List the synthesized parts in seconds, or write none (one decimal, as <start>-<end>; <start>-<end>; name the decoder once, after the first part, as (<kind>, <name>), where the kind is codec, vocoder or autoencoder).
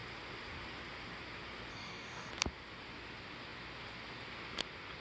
1.7-2.3 (codec, DAC)